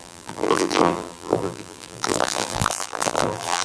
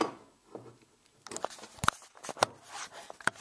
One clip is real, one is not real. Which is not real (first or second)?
first